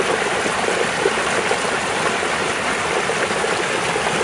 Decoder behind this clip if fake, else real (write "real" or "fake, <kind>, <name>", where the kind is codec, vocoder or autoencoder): real